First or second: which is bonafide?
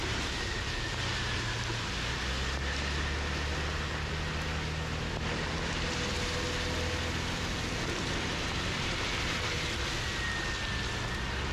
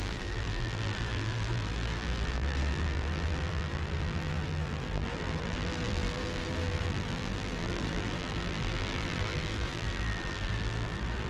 first